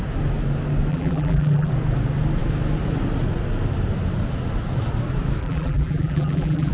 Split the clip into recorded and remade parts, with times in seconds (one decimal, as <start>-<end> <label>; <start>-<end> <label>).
0.0-0.9 recorded; 0.9-1.7 remade; 1.7-5.4 recorded; 5.4-6.7 remade